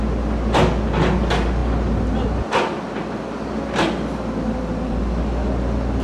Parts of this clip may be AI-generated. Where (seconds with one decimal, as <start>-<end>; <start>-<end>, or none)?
none